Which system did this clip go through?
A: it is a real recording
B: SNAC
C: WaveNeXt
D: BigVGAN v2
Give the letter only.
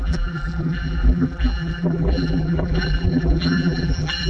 D